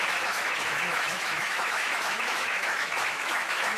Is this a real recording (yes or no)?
no